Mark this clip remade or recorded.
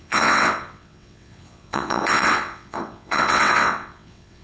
remade